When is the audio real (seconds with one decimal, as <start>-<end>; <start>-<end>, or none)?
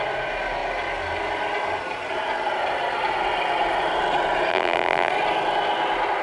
0.0-4.5; 5.1-6.2